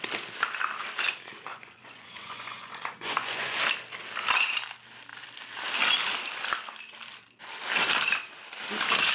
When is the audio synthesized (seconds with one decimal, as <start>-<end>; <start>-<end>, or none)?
1.5-3.6